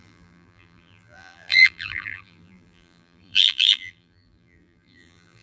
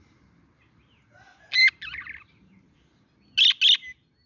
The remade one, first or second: first